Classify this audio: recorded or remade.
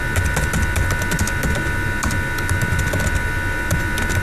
recorded